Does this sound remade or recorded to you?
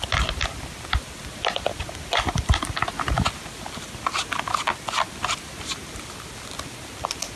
recorded